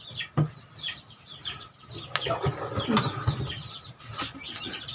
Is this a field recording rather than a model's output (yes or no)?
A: yes